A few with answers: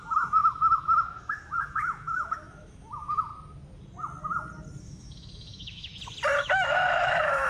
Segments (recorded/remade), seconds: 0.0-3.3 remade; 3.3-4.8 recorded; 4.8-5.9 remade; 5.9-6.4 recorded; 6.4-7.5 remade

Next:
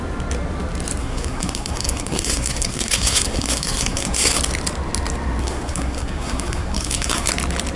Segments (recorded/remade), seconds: 0.0-1.0 recorded; 1.0-4.4 remade; 4.4-5.4 recorded; 5.4-7.3 remade; 7.3-7.8 recorded

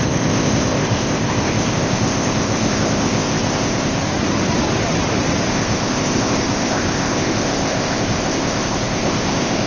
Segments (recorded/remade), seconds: 0.0-4.0 remade; 4.0-5.5 recorded; 5.5-9.7 remade